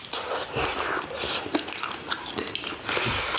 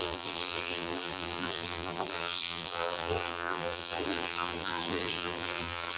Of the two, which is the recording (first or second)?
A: first